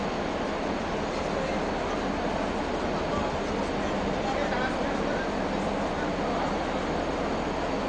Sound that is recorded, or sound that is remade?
recorded